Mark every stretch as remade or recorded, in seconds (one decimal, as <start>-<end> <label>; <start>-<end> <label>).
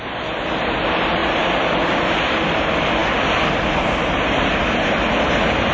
0.0-5.7 recorded